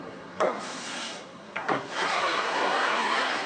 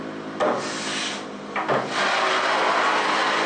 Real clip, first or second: second